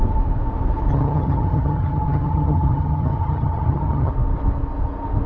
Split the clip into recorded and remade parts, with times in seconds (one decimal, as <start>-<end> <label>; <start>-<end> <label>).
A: 0.0-0.9 recorded; 0.9-4.1 remade; 4.1-5.3 recorded